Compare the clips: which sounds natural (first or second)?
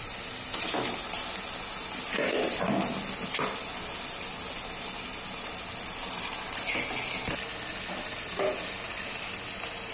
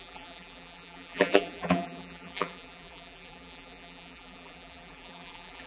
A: first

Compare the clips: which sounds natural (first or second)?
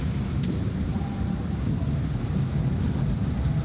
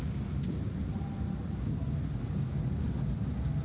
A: second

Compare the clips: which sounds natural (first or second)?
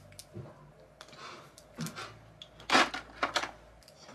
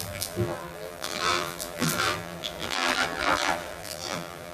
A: first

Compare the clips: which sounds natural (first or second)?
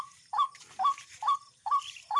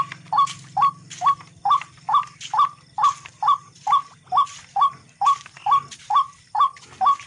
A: second